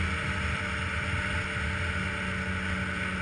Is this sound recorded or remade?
recorded